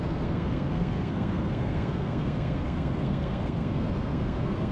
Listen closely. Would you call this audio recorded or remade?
remade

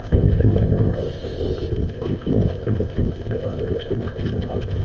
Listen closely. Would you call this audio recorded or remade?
remade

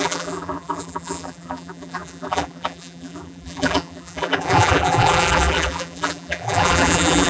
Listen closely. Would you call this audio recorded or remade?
remade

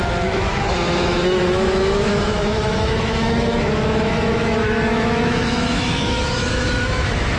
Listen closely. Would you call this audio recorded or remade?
remade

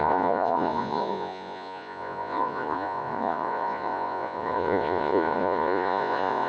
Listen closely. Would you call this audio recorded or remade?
remade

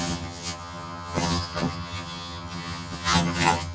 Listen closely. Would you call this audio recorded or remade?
remade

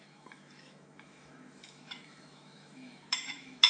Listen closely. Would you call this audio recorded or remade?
remade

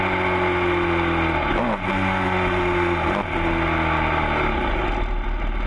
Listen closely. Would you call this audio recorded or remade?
recorded